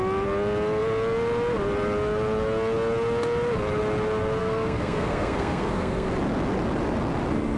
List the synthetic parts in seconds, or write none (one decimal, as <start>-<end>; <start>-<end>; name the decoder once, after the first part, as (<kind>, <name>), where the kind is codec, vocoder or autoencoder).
4.4-6.1 (codec, SNAC)

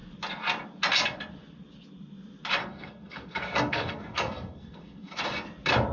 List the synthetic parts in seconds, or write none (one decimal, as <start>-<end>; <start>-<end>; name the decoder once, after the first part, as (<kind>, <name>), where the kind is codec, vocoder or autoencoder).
2.6-5.2 (codec, SNAC)

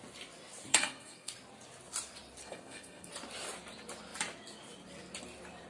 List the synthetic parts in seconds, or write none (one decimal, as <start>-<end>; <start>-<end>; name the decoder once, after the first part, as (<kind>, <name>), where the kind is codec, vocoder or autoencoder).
0.7-1.3 (codec, SNAC); 2.4-3.1

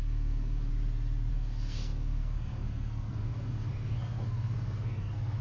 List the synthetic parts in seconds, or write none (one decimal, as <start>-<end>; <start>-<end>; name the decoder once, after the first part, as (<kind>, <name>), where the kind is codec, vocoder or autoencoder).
0.0-0.7 (codec, SNAC); 1.3-5.4

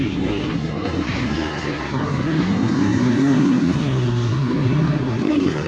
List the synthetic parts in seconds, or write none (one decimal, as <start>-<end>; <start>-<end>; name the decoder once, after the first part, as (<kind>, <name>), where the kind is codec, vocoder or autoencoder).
0.0-5.7 (codec, SNAC)

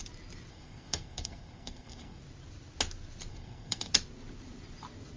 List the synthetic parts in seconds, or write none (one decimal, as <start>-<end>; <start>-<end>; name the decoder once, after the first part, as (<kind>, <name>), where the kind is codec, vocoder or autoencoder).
0.5-2.2 (codec, SNAC); 3.3-3.9

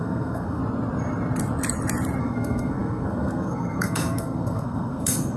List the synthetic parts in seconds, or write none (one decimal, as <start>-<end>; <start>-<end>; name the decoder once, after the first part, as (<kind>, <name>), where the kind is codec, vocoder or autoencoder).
0.0-0.6 (codec, SNAC); 2.2-5.4